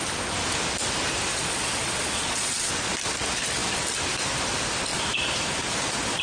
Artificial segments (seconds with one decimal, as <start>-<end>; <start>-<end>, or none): 1.3-2.7